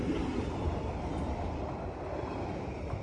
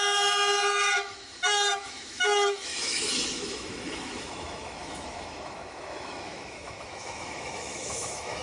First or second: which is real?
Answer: first